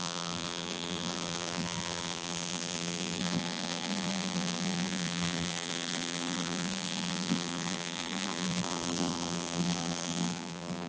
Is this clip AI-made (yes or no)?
yes